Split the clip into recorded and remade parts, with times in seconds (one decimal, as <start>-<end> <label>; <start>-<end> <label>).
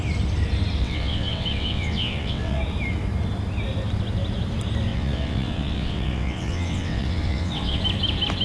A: 0.0-0.8 recorded; 0.8-2.6 remade; 2.6-4.9 recorded; 4.9-7.8 remade; 7.8-8.4 recorded